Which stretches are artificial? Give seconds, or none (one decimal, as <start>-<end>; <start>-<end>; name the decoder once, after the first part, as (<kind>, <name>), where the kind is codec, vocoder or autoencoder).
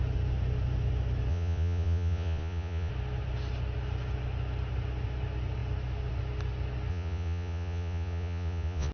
1.3-2.9 (vocoder, Vocos); 6.9-8.9